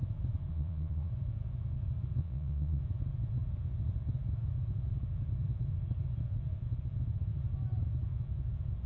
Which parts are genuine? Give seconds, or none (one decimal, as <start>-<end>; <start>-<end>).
0.0-0.5; 1.1-2.2; 2.8-8.9

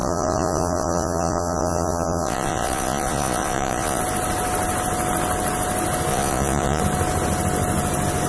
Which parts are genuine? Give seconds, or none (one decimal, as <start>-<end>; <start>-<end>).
4.0-6.1; 6.8-8.3

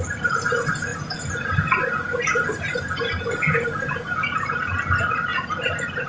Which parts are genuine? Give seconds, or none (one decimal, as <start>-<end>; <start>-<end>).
0.0-6.1

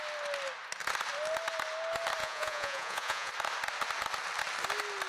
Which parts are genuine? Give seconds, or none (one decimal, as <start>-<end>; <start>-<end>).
0.0-2.2; 3.3-5.1

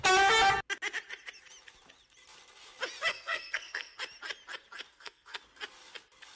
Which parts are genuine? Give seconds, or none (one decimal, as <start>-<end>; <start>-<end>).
0.0-3.1; 4.0-4.9; 5.4-6.4

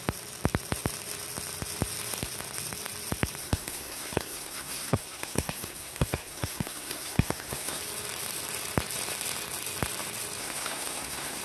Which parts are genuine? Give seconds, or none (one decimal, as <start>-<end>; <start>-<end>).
0.0-3.4; 7.8-10.4

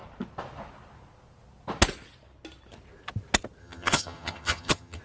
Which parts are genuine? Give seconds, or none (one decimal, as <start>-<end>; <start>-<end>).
0.0-3.6

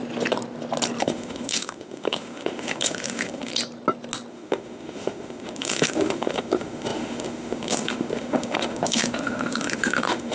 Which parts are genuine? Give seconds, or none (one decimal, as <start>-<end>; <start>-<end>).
0.0-1.0; 3.5-4.3